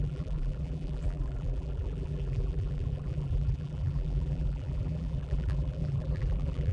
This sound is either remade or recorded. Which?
remade